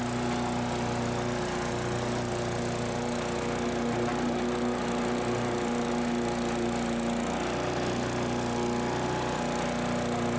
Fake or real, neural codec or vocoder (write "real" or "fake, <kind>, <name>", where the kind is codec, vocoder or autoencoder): real